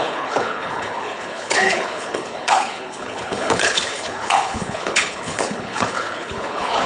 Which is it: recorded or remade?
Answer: remade